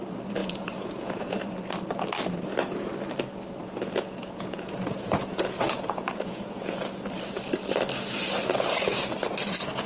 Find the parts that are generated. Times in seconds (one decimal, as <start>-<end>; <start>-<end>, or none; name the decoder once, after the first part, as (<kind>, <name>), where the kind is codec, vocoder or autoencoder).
0.4-1.4 (vocoder, Vocos); 3.6-6.8

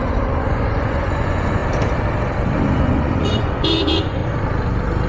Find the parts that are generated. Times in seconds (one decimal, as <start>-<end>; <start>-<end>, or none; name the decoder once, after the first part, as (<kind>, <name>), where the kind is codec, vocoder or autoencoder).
0.0-1.6 (vocoder, Vocos); 2.6-4.2

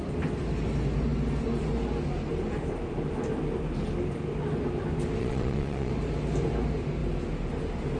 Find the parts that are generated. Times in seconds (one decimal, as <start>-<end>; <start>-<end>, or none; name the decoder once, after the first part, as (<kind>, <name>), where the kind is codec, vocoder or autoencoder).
5.2-5.9 (vocoder, Vocos)

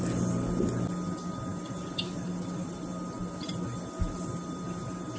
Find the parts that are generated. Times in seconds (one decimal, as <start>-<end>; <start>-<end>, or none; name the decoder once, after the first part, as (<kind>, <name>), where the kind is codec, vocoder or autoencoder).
none

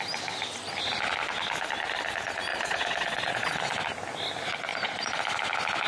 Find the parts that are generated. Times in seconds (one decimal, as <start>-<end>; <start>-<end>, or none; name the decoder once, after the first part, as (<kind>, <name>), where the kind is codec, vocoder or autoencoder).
2.5-3.6 (vocoder, Vocos); 4.7-5.2

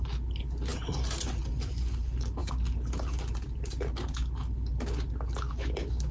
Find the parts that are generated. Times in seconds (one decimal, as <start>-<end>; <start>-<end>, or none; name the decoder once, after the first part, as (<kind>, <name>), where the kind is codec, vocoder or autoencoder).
none